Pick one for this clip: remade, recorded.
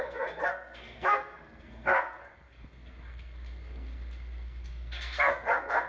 remade